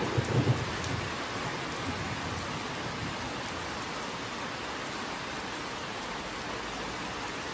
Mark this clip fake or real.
real